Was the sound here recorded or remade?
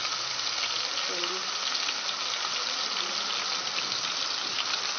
recorded